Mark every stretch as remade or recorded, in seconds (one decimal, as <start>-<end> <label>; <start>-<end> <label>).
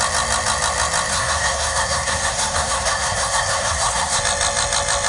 0.0-1.1 recorded; 1.1-4.2 remade; 4.2-5.1 recorded